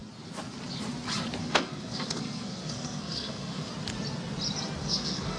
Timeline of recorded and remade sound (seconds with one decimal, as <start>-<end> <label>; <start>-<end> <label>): 0.0-1.4 recorded; 1.4-3.7 remade; 3.7-4.8 recorded; 4.8-5.4 remade